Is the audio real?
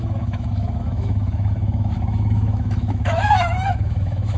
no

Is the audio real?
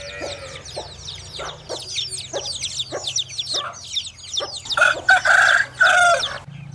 yes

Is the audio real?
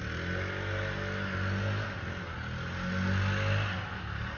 yes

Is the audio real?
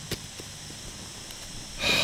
yes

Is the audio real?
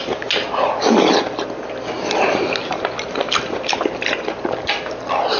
yes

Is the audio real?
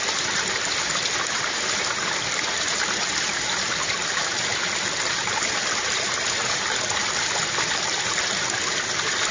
yes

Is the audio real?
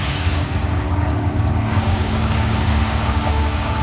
no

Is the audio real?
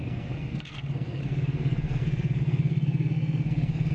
no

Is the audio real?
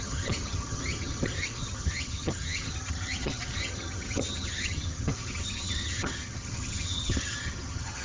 no